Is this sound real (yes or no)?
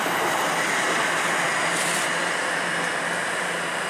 yes